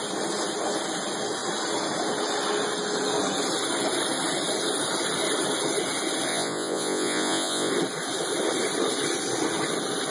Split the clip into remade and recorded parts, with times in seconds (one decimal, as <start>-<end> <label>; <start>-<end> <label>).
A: 0.0-6.3 recorded; 6.3-7.7 remade; 7.7-10.1 recorded